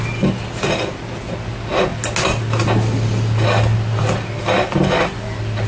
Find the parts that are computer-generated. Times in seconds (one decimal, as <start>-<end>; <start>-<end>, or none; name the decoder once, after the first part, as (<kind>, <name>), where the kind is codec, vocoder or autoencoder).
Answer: none